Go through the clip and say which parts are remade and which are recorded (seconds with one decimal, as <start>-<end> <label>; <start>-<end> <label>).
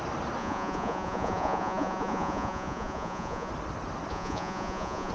0.0-0.4 recorded; 0.4-3.5 remade; 3.5-4.1 recorded; 4.1-5.1 remade